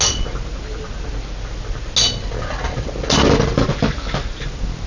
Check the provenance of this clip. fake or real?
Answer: real